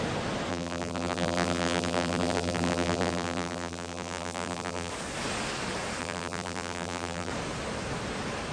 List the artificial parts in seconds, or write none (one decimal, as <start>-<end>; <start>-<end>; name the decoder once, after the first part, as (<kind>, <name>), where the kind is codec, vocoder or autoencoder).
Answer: 0.5-4.9 (vocoder, BigVGAN v2); 6.0-7.3